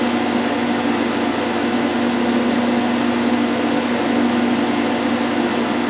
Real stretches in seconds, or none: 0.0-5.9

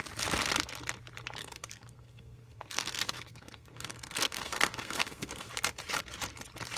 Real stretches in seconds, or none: 0.0-1.4; 5.5-6.8

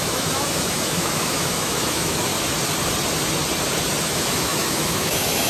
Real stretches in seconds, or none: 2.3-4.0

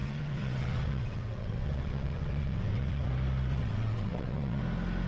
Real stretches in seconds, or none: 3.1-3.5; 4.6-5.1

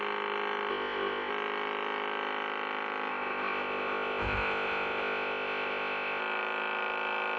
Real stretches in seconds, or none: 0.0-0.7; 1.3-3.1; 6.2-7.4

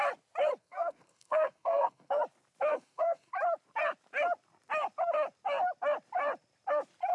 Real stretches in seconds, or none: 0.0-0.6; 2.2-2.7; 3.3-7.1